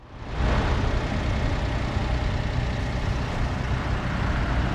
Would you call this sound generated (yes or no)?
no